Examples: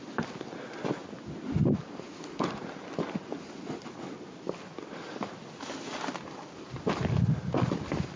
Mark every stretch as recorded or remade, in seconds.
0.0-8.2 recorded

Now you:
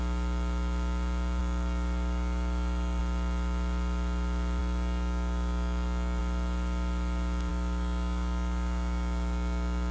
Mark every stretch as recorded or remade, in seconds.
0.0-1.4 recorded; 1.4-3.0 remade; 3.0-4.6 recorded; 4.6-6.2 remade; 6.2-7.5 recorded; 7.5-9.9 remade

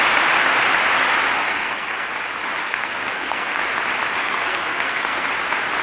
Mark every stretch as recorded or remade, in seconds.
0.0-1.4 recorded; 1.4-2.1 remade; 2.1-2.6 recorded; 2.6-3.6 remade; 3.6-4.2 recorded; 4.2-5.3 remade; 5.3-5.8 recorded